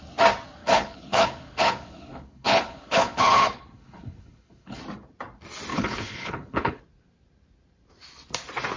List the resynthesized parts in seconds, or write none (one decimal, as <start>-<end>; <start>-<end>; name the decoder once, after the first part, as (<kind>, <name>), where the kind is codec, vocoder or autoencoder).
0.6-4.8 (codec, HILCodec); 5.7-6.8